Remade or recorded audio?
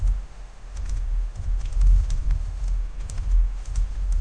remade